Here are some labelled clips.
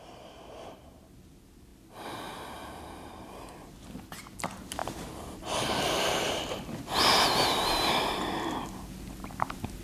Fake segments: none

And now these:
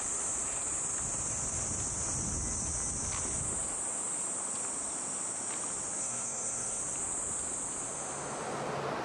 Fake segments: 6.0-6.8 (codec, SNAC)

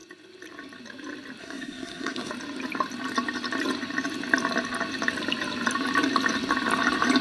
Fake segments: 1.4-2.3 (codec, SNAC)

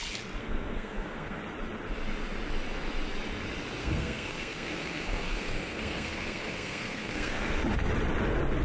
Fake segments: 0.4-1.4 (codec, SNAC); 3.8-7.6

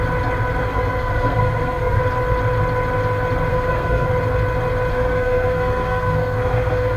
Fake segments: 0.6-2.0 (codec, SNAC); 3.5-4.1; 4.9-7.0

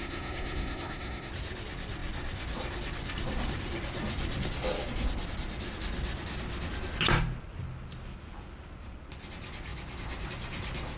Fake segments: 0.0-1.3 (codec, SNAC)

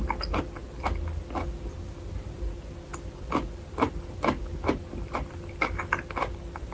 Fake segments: none

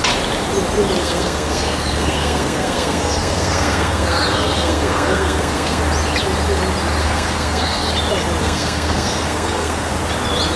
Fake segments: 1.0-5.8 (codec, SNAC); 7.0-7.9; 8.4-9.9